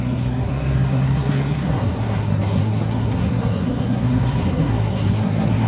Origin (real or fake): fake